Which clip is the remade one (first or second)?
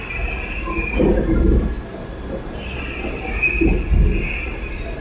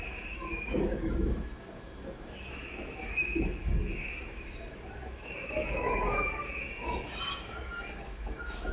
second